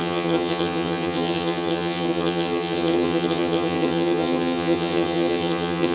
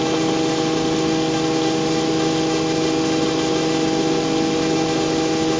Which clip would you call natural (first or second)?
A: second